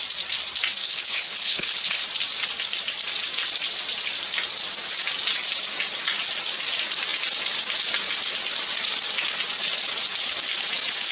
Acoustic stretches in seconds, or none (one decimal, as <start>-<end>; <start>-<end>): 0.0-0.8; 2.0-11.1

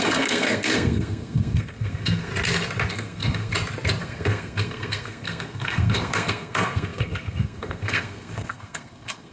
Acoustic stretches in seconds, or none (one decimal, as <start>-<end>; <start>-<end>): 2.3-2.9; 3.5-4.0

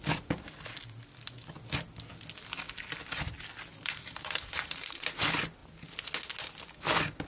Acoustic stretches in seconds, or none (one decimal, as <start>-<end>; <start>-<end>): 0.0-3.7; 5.0-7.3